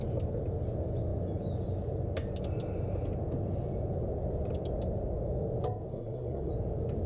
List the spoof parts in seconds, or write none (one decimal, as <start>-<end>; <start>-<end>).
5.9-6.5